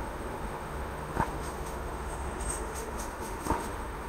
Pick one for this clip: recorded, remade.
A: remade